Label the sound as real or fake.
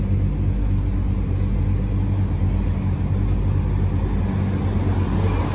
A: real